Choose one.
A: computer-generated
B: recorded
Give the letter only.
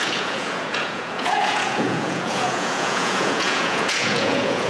A